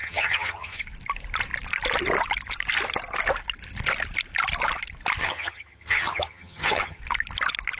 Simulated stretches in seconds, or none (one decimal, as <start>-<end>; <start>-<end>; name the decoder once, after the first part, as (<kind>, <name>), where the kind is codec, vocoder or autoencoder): 0.0-0.8 (vocoder, HiFi-GAN); 5.2-7.0

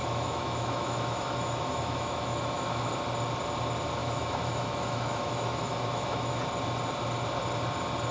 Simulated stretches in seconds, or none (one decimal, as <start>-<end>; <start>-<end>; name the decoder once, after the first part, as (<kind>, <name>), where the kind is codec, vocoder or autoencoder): 0.0-2.9 (autoencoder, DAC-VAE); 4.0-6.4

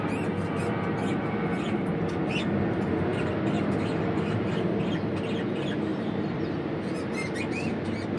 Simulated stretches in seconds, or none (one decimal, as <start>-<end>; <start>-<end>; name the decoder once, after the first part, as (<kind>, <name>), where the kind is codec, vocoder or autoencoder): none